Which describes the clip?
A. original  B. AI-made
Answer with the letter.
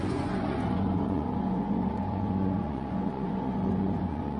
B